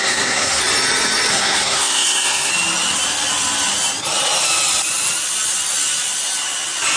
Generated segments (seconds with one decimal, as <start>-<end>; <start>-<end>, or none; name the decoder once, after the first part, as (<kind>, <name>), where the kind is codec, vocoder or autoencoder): 0.0-0.6 (codec, SNAC); 1.3-2.5